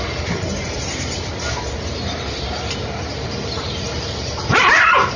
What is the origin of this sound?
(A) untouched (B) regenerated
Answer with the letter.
B